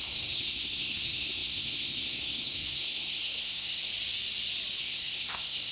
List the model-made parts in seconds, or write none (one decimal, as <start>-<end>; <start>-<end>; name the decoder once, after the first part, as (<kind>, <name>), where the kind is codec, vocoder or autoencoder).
0.0-3.9 (codec, SNAC); 4.8-5.7